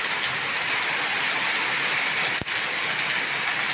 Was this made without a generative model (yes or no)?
yes